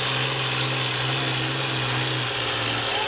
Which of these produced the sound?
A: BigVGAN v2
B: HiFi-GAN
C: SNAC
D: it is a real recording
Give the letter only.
D